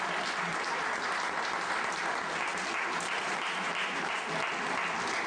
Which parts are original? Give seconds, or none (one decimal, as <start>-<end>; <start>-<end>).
0.0-2.5; 4.2-5.3

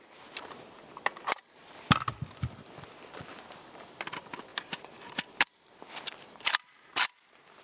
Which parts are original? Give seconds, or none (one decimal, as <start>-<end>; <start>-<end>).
0.0-7.6

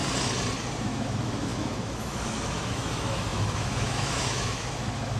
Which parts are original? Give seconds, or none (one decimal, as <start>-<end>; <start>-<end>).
0.0-0.8

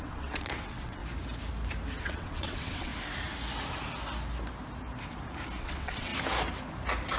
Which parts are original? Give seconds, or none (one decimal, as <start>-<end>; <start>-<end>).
1.0-2.0; 2.9-5.6; 6.1-7.2

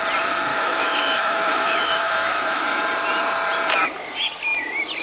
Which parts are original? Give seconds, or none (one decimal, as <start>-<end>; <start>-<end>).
0.0-0.5; 2.8-5.0